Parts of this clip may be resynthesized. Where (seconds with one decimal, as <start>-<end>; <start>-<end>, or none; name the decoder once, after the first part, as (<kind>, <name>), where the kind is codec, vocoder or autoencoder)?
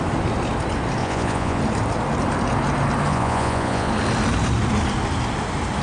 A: 1.0-1.6 (vocoder, Vocos); 3.1-3.9